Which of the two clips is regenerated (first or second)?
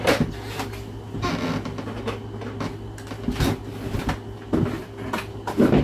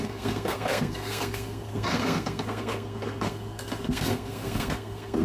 second